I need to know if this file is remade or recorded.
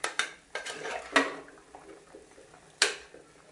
recorded